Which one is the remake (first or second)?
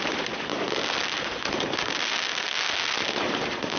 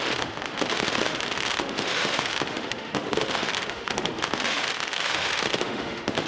second